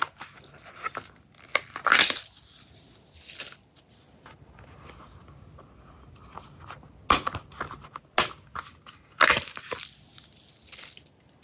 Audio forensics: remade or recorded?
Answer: recorded